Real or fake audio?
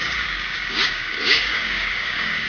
fake